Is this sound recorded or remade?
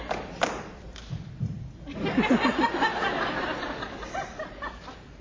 recorded